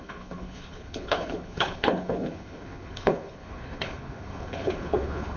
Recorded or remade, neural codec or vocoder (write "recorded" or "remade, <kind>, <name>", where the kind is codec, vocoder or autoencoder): remade, codec, HILCodec